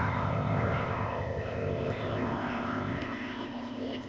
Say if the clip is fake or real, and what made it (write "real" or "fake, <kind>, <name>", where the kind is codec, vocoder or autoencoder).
fake, codec, ZipCodec